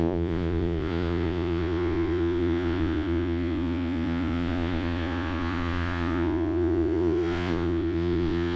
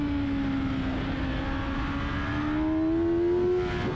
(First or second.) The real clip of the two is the second